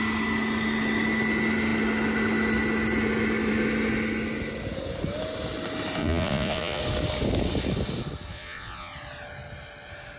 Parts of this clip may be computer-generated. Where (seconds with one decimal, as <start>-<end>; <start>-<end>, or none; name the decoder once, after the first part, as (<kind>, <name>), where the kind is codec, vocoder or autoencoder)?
6.0-6.8 (vocoder, Vocos); 8.3-8.9